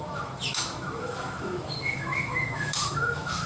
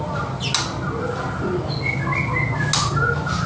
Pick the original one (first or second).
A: second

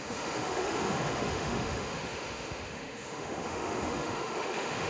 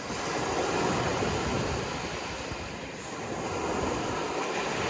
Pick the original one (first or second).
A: second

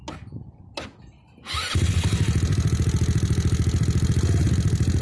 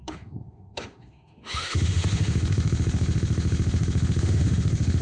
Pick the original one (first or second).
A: first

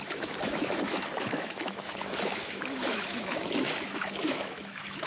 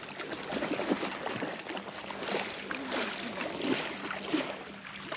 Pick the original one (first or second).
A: second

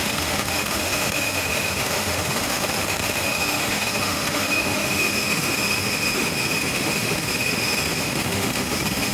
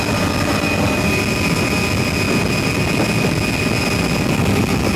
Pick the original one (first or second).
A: second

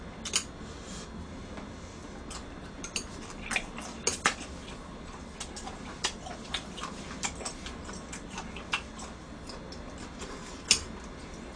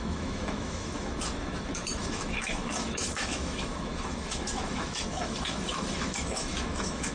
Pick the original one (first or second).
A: first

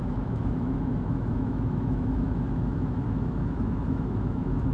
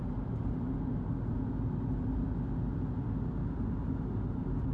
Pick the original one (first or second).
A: second